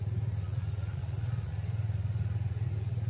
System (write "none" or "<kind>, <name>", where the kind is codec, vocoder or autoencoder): vocoder, Vocos